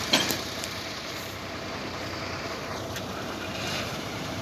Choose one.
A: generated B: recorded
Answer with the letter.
A